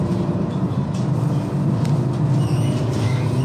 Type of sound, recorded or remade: recorded